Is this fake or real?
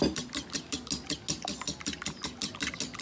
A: real